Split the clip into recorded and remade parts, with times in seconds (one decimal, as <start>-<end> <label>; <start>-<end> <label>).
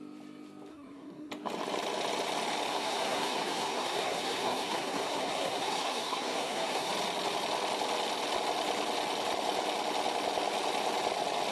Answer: 0.0-0.7 recorded; 0.7-1.3 remade; 1.3-2.7 recorded; 2.7-6.9 remade; 6.9-11.5 recorded